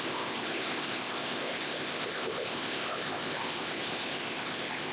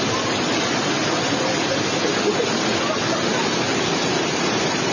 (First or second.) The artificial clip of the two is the first